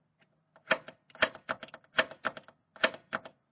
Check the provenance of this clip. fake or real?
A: real